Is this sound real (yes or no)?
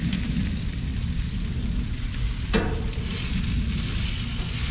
yes